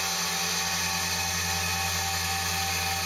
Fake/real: real